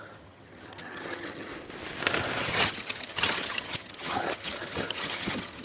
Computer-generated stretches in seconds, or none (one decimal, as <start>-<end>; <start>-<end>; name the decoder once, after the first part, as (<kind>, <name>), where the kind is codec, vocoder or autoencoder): 0.0-1.5 (vocoder, HiFi-GAN); 2.4-5.6